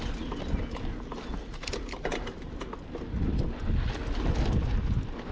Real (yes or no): yes